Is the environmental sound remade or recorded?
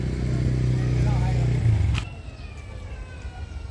recorded